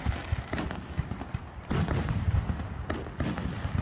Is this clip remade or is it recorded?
recorded